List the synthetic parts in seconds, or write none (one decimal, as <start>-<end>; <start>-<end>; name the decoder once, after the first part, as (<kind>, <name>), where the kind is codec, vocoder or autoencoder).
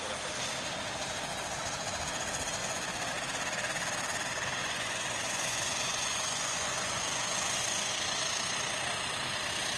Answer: 2.6-3.1 (vocoder, Vocos); 4.6-7.9